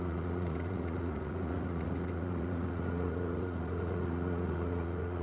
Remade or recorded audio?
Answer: remade